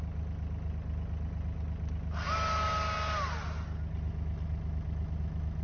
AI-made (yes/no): no